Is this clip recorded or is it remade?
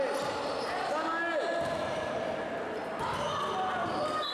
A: recorded